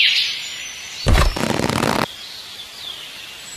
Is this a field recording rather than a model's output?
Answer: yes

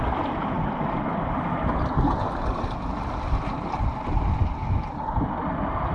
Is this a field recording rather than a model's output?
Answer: yes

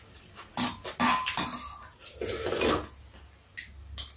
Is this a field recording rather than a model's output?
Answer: yes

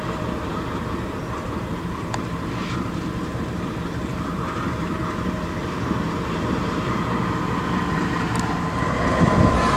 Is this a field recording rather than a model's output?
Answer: no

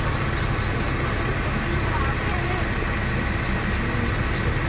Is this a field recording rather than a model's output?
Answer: yes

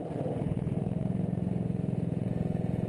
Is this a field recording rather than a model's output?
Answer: no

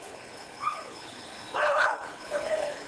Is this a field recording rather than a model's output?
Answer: no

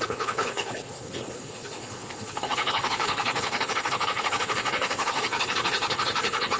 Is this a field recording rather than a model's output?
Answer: no